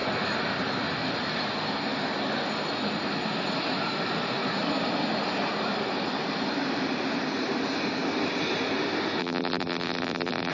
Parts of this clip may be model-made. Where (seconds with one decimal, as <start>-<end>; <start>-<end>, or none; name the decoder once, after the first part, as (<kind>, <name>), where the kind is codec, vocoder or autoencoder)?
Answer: 9.2-10.5 (vocoder, BigVGAN v2)